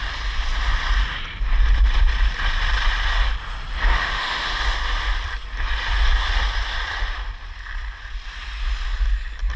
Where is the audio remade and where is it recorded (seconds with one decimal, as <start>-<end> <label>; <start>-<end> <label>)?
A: 0.0-3.9 recorded; 3.9-4.6 remade; 4.6-9.6 recorded